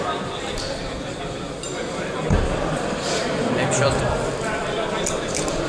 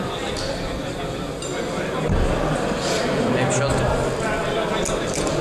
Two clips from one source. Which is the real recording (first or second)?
second